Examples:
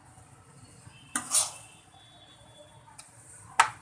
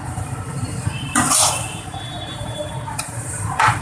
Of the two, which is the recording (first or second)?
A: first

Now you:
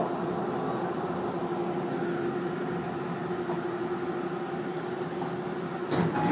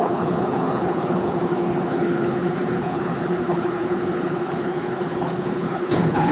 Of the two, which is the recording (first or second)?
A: first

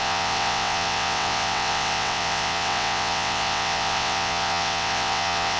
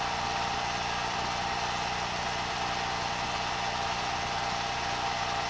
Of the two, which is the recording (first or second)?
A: second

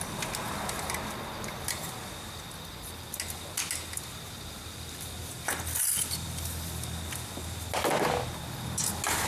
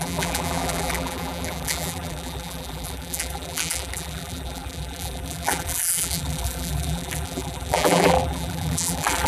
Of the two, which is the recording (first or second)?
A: first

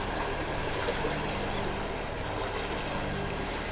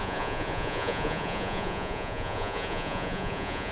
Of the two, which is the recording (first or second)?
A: first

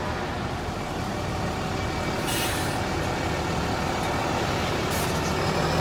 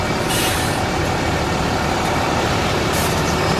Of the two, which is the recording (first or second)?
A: first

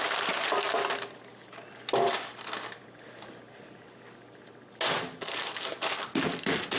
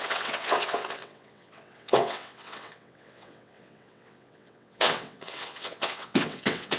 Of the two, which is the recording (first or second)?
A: first